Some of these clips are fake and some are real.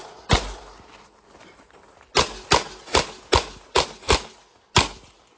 real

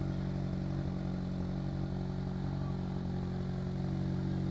real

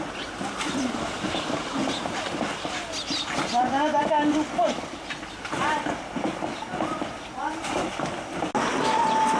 real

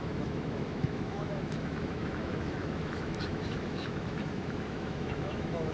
fake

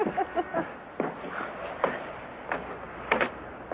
real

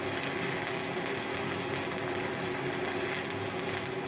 real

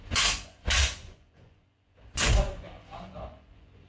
fake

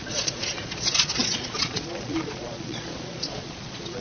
fake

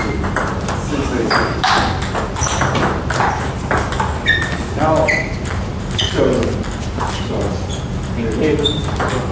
real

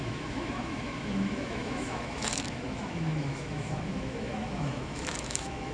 fake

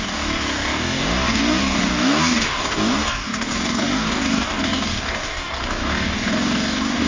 fake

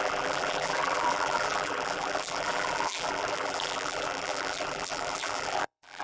fake